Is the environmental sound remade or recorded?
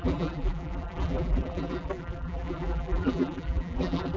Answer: remade